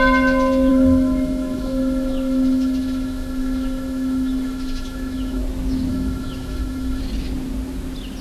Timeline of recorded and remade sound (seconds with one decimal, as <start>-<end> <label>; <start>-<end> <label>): 0.0-0.7 recorded; 0.7-5.4 remade; 5.4-5.9 recorded; 5.9-7.0 remade; 7.0-8.2 recorded